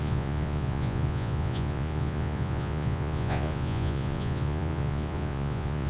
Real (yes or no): no